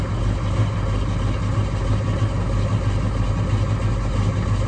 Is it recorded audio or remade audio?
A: recorded